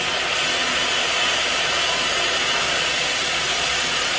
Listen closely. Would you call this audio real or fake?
fake